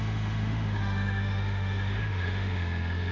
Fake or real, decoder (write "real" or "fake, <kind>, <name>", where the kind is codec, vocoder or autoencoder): fake, autoencoder, DAC-VAE